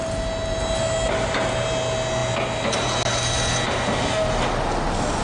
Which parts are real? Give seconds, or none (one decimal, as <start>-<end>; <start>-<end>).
0.0-5.2